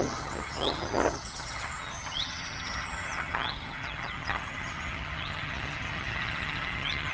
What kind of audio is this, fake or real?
fake